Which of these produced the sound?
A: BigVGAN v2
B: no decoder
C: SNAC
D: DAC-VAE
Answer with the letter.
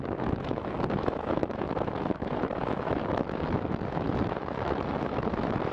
D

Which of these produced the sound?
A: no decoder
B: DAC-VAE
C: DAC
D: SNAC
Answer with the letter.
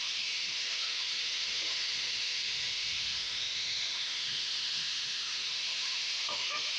B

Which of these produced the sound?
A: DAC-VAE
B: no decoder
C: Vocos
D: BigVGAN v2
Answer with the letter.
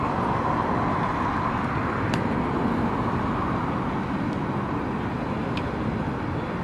B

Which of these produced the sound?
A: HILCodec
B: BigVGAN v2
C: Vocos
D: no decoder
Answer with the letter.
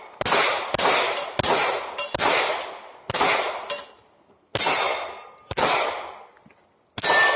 D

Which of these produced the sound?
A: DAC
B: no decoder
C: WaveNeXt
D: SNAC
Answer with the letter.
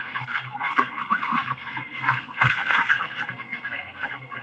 D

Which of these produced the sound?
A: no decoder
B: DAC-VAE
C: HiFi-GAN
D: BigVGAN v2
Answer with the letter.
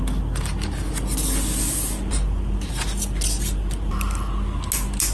A